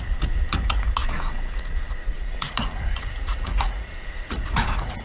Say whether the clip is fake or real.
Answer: fake